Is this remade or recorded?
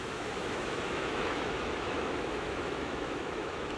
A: remade